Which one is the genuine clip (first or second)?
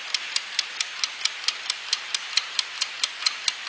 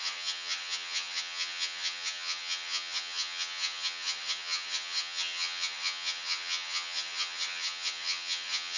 first